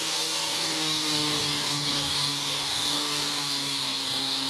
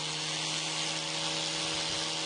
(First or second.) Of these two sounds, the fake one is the first